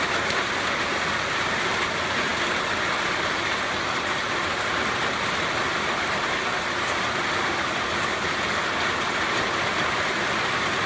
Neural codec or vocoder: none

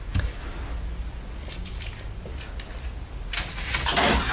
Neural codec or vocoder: none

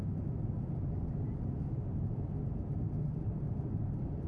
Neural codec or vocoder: none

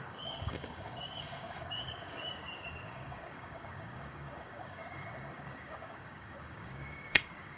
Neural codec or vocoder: codec, DAC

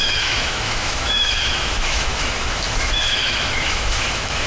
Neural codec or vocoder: autoencoder, DAC-VAE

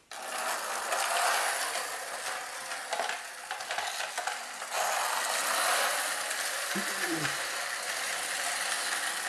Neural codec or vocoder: none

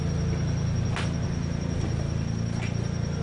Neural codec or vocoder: none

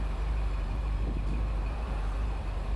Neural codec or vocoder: vocoder, BigVGAN v2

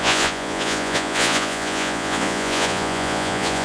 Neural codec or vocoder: vocoder, Vocos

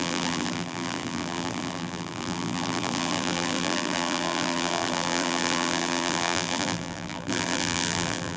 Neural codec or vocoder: vocoder, BigVGAN v2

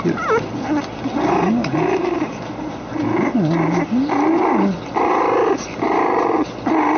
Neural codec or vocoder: none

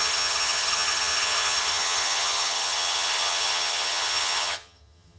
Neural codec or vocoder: vocoder, HiFi-GAN